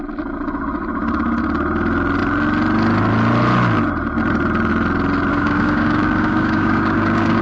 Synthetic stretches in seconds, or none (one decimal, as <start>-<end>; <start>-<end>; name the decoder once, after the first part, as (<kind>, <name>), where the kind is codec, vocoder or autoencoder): 5.3-7.4 (codec, DAC)